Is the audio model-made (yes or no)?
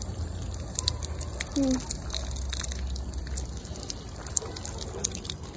no